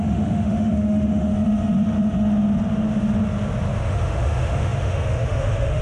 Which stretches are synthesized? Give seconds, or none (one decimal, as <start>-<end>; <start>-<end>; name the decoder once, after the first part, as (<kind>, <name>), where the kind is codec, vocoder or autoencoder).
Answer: 0.0-1.3 (autoencoder, DAC-VAE); 3.8-5.8